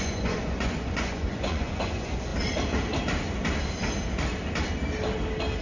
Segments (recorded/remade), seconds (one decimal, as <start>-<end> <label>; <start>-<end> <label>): 0.0-2.3 remade; 2.3-5.6 recorded